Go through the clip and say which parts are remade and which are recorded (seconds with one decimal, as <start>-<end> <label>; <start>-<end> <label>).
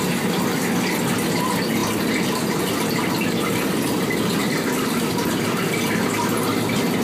0.0-7.0 recorded